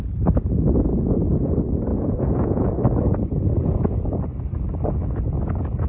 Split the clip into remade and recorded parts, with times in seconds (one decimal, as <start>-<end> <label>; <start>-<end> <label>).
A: 0.0-0.9 recorded; 0.9-1.5 remade; 1.5-1.9 recorded; 1.9-2.8 remade; 2.8-5.9 recorded